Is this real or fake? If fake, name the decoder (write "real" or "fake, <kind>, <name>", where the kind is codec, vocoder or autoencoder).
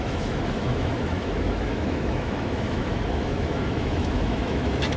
fake, autoencoder, DAC-VAE